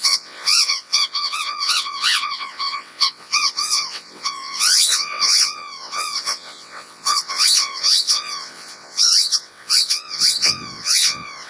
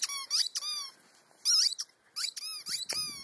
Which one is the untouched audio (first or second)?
second